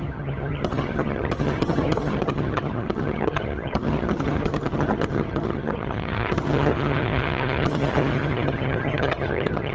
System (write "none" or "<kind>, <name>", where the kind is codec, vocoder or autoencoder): vocoder, HiFi-GAN